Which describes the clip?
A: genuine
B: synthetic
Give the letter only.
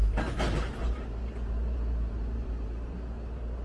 B